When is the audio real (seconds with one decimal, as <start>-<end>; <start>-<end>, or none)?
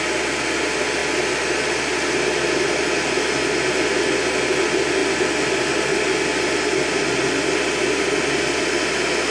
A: 0.0-9.3